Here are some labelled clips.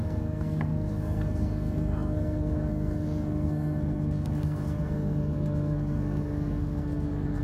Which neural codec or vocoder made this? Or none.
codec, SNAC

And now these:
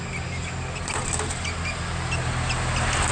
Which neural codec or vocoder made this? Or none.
none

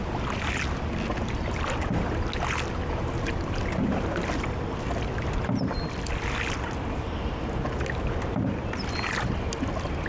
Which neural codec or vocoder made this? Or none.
none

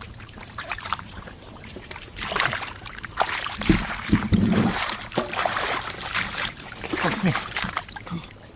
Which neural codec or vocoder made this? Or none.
vocoder, BigVGAN v2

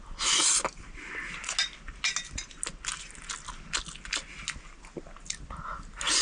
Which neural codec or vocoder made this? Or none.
none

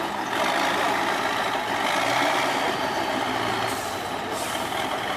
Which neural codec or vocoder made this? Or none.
none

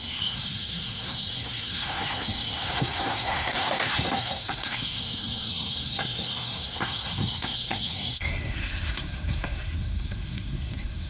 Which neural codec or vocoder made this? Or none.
codec, SNAC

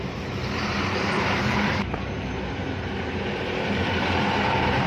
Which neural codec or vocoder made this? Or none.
vocoder, BigVGAN v2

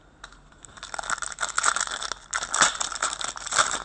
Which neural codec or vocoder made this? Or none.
none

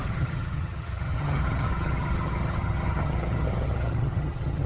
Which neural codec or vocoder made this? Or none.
vocoder, HiFi-GAN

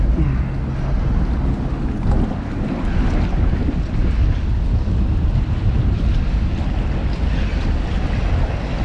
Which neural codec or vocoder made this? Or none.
none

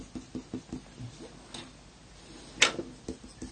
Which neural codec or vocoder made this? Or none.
none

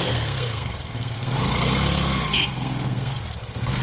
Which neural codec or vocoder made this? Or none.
codec, SNAC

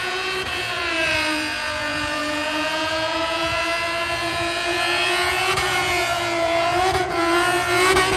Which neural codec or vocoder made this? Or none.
vocoder, Vocos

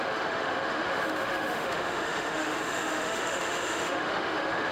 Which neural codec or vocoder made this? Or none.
autoencoder, DAC-VAE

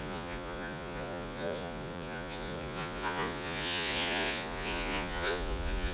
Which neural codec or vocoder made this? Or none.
vocoder, Vocos